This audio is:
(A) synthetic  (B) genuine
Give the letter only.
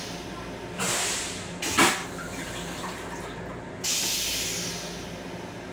B